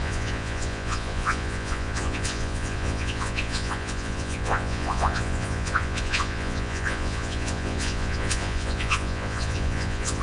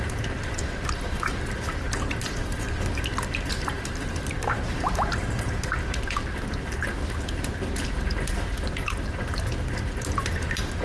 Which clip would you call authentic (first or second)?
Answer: second